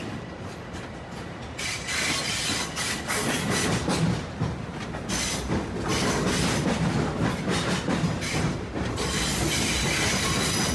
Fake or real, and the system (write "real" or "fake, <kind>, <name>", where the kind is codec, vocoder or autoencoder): real